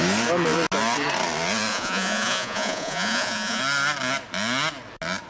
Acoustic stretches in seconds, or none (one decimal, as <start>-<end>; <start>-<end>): 0.0-1.7; 3.6-5.3